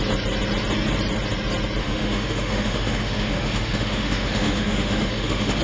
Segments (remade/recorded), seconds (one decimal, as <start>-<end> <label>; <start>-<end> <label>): 0.0-1.8 recorded; 1.8-5.6 remade